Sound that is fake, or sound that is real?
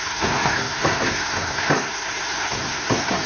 fake